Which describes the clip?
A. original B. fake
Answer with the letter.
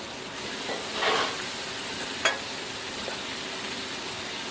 A